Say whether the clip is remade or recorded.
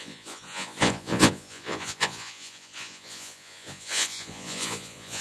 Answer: remade